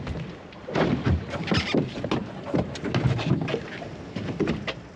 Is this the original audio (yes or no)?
yes